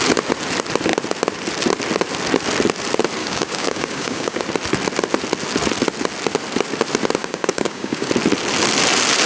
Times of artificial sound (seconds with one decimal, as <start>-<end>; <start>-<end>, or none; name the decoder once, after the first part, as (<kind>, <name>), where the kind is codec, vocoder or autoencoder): 3.2-4.4 (codec, DAC); 7.2-8.1